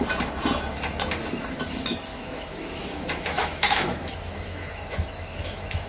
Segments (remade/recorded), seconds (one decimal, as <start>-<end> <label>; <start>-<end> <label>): 0.0-2.1 recorded; 2.1-5.9 remade